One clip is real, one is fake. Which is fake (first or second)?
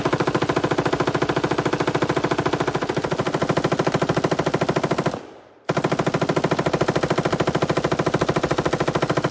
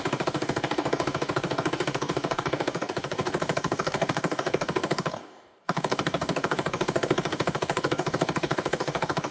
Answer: second